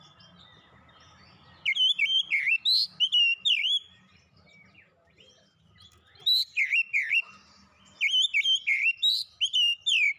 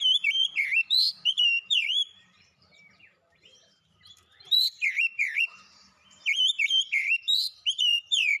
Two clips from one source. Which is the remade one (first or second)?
second